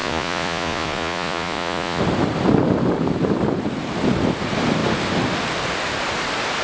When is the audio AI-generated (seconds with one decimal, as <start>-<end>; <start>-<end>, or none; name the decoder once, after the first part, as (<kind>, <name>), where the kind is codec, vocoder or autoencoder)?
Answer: 0.0-2.0 (vocoder, Vocos)